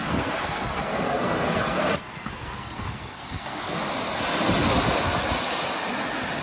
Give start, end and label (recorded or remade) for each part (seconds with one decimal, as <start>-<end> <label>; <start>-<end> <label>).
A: 0.0-3.7 remade; 3.7-6.4 recorded